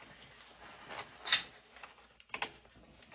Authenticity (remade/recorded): recorded